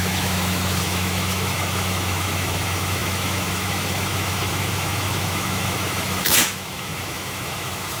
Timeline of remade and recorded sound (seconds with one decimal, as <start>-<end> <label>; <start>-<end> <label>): 0.0-8.0 remade